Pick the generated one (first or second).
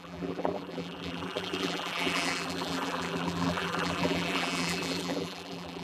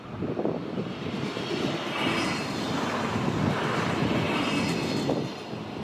first